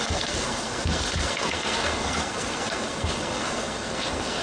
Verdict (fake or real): fake